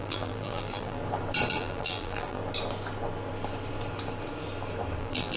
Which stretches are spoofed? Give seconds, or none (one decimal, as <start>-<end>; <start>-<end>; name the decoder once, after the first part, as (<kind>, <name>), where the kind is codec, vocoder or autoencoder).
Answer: 0.0-1.0 (vocoder, BigVGAN v2); 1.5-2.4; 5.0-5.4